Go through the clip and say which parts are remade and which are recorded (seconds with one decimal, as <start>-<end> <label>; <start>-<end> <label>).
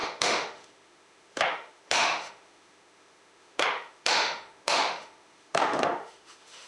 0.0-6.7 remade